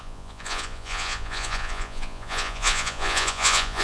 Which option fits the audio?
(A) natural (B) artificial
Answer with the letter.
B